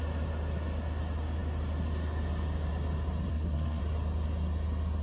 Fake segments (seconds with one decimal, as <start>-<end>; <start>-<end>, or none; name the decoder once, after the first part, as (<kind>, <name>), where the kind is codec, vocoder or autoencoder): 3.3-3.8 (codec, SNAC)

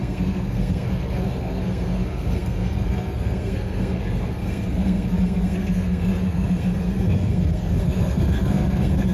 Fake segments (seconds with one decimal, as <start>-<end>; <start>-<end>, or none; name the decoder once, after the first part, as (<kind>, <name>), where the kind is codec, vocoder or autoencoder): 0.0-9.1 (codec, SNAC)

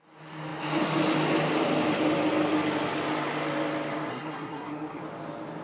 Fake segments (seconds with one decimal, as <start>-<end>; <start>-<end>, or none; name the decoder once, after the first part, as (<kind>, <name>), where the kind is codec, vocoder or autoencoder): 4.1-5.0 (codec, SNAC)

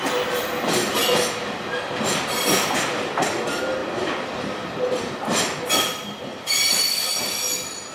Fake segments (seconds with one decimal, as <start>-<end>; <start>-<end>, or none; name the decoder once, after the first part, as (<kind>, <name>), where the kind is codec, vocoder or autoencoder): none